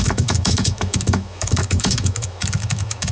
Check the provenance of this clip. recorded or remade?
remade